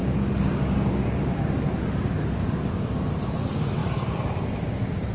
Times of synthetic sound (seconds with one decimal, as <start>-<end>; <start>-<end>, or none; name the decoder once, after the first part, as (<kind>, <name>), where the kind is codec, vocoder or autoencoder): 0.0-5.1 (codec, DAC)